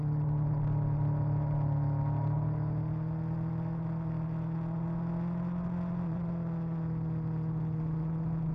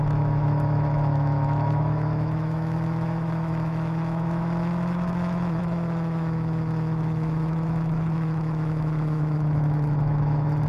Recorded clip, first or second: first